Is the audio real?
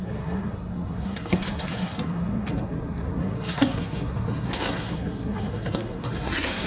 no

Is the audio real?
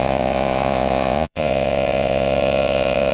no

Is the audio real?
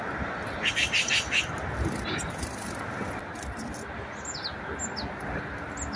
yes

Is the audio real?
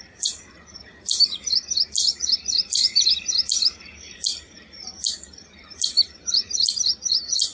no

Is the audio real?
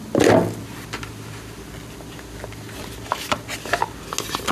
yes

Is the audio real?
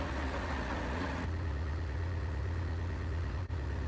no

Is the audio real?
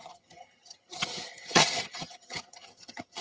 no